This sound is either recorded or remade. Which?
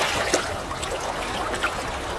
recorded